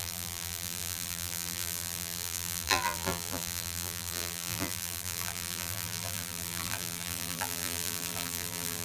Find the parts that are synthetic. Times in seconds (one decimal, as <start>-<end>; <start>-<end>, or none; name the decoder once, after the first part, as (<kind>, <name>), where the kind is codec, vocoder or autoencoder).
0.0-8.8 (vocoder, BigVGAN v2)